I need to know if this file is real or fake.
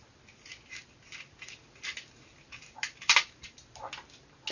real